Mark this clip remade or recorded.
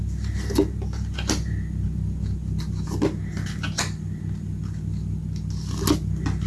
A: recorded